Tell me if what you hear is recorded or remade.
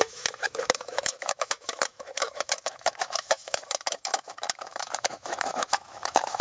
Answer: remade